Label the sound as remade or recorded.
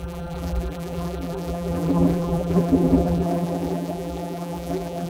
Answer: remade